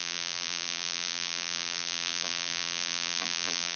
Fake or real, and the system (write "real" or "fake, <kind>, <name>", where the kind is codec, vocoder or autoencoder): fake, vocoder, BigVGAN v2